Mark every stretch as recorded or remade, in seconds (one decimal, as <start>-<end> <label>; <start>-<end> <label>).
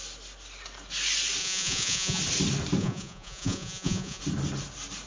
0.0-1.4 recorded; 1.4-2.2 remade; 2.2-2.8 recorded; 2.8-4.2 remade; 4.2-5.1 recorded